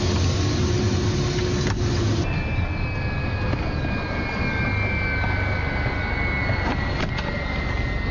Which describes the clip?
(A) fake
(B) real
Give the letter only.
B